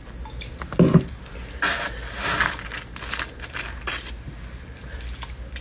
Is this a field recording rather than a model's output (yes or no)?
yes